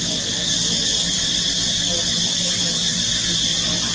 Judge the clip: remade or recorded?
recorded